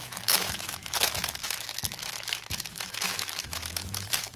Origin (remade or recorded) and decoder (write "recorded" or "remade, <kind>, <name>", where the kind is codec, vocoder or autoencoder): remade, autoencoder, DAC-VAE